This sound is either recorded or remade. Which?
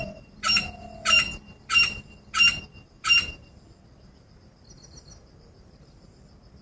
recorded